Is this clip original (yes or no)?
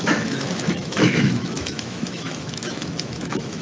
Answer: no